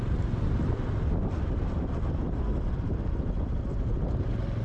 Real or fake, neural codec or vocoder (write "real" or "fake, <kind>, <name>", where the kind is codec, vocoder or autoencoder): real